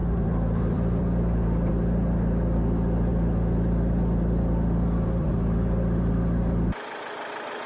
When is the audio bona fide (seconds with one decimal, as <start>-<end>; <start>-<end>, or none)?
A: 1.7-3.1; 6.1-7.7